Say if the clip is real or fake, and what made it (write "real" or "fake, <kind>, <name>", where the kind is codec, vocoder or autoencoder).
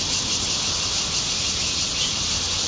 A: real